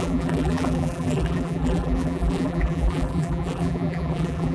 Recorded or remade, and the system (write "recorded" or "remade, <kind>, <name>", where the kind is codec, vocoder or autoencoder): remade, vocoder, BigVGAN v2